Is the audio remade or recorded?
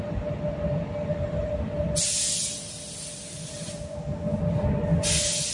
recorded